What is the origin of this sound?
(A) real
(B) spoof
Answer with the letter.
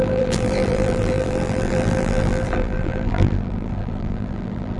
B